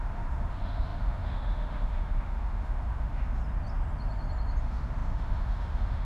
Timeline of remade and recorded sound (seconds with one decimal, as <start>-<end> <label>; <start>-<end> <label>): 0.0-3.4 remade; 3.4-4.6 recorded; 4.6-6.0 remade